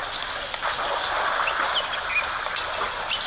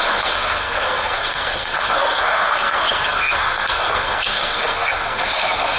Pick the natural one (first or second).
first